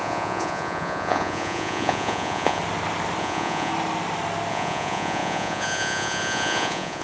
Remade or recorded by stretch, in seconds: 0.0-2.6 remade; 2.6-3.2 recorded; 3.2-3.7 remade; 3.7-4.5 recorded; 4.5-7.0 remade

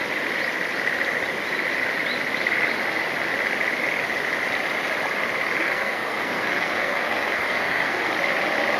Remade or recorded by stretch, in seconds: 0.0-5.6 recorded; 5.6-8.1 remade; 8.1-8.8 recorded

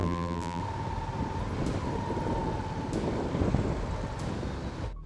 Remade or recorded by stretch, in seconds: 0.0-0.6 remade; 0.6-5.1 recorded

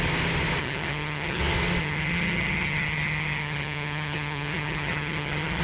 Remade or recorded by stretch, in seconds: 0.0-0.6 recorded; 0.6-1.4 remade; 1.4-1.8 recorded; 1.8-5.6 remade

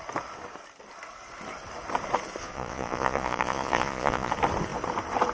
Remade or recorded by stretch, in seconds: 0.0-2.4 recorded; 2.4-4.3 remade; 4.3-5.3 recorded

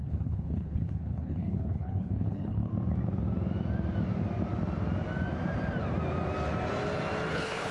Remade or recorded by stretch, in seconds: 0.0-2.7 remade; 2.7-7.3 recorded; 7.3-7.7 remade

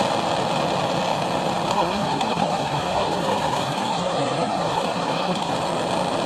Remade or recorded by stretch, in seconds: 0.0-1.7 recorded; 1.7-5.5 remade; 5.5-6.3 recorded